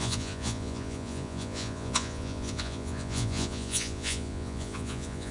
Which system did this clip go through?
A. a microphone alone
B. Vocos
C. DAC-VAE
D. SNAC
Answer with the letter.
B